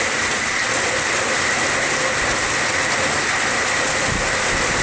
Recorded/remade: recorded